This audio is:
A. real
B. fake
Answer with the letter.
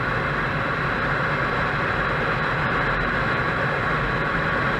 A